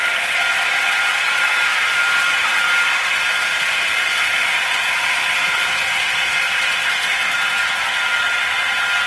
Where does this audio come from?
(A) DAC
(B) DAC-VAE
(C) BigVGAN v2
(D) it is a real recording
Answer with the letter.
D